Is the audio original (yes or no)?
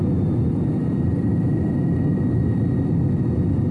yes